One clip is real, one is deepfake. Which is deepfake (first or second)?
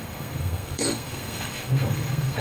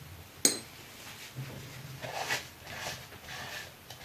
first